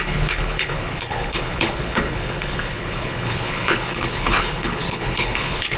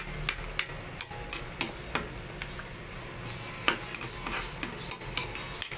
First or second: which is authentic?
second